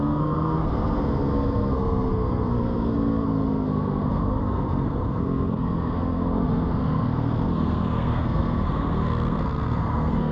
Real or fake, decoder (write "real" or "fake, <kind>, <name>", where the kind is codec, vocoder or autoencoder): fake, codec, SNAC